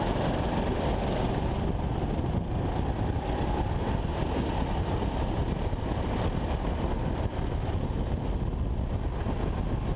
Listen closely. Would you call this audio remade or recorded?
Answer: recorded